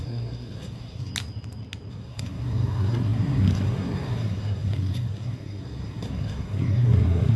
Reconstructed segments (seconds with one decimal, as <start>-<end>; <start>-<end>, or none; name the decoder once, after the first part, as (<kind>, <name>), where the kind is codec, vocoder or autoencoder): 0.0-1.1 (codec, SNAC); 1.9-7.4